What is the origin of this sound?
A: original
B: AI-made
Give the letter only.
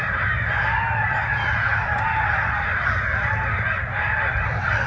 A